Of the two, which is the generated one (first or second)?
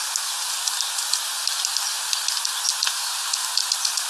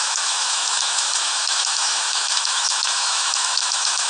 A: second